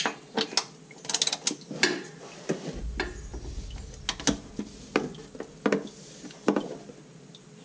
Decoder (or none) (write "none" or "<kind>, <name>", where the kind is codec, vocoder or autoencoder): none